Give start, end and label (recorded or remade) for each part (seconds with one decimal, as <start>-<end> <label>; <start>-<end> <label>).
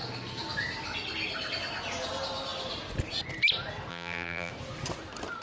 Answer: 0.0-3.9 recorded; 3.9-4.5 remade; 4.5-5.4 recorded